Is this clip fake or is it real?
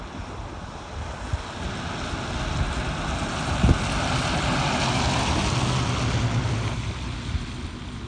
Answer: real